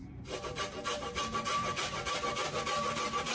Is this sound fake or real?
fake